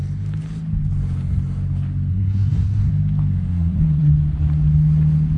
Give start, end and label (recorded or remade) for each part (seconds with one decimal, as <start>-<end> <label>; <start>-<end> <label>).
0.0-2.1 recorded; 2.1-2.9 remade; 2.9-3.5 recorded; 3.5-4.1 remade; 4.1-5.4 recorded